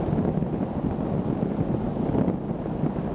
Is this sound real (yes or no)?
yes